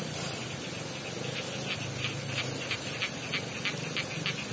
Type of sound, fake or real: real